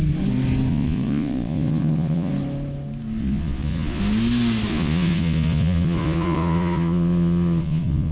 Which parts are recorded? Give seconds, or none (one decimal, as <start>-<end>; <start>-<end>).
0.0-0.7; 2.3-3.2; 4.0-4.7